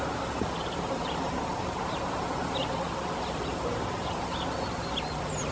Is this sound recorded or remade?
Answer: recorded